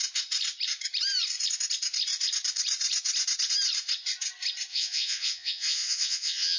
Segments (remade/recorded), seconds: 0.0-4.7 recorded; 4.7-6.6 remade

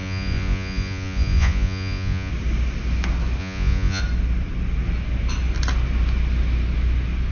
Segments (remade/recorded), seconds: 0.0-2.3 remade; 2.3-3.4 recorded; 3.4-4.0 remade; 4.0-7.3 recorded

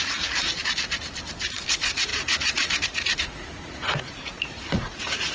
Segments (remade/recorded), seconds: 0.0-0.4 remade; 0.4-1.7 recorded; 1.7-5.3 remade